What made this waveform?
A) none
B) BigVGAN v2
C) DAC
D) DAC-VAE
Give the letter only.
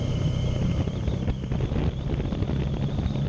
A